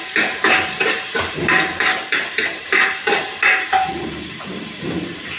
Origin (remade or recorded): remade